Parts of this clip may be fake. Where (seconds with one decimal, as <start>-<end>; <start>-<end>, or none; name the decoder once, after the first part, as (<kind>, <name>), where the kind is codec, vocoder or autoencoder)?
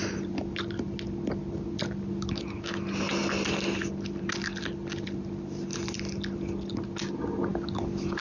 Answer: none